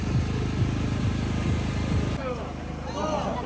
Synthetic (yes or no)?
no